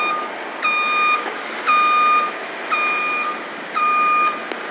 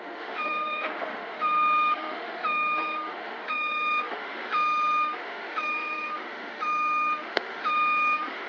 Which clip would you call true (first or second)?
first